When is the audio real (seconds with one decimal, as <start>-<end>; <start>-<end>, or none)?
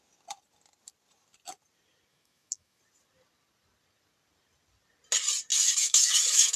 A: 0.0-2.1; 2.8-5.5